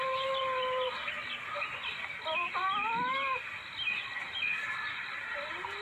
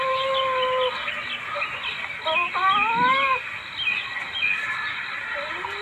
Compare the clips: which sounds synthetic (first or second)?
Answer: first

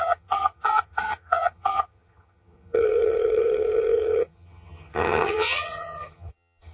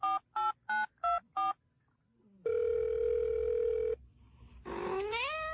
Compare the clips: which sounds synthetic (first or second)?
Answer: first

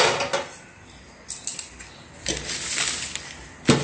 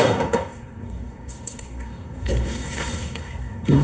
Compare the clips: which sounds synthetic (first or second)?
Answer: second